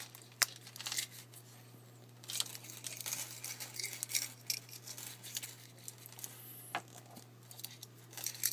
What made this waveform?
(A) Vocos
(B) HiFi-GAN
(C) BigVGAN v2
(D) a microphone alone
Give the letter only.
D